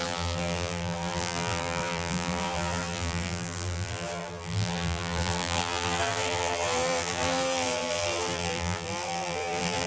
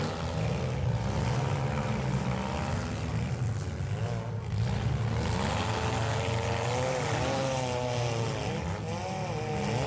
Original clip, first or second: second